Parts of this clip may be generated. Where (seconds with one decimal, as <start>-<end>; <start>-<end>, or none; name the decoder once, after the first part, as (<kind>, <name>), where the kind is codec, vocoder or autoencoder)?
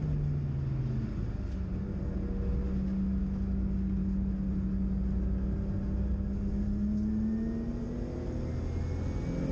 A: none